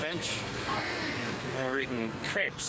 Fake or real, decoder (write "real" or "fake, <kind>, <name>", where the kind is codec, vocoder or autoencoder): fake, codec, SNAC